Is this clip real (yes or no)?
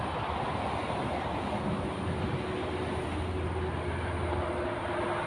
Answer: yes